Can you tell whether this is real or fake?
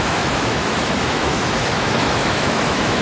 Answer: fake